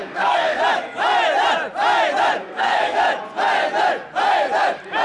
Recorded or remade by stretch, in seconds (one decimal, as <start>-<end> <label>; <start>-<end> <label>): 0.0-0.6 remade; 0.6-2.4 recorded; 2.4-3.0 remade; 3.0-5.0 recorded